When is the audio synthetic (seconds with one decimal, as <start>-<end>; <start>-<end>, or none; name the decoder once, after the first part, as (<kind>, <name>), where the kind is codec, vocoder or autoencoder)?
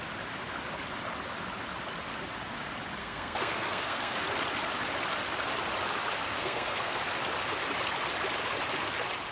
3.0-4.2 (codec, SNAC); 6.3-7.0